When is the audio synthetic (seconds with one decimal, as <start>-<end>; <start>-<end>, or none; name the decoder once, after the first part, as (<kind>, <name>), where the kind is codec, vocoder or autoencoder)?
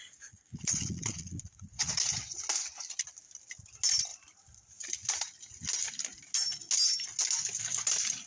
0.0-1.9 (vocoder, Vocos)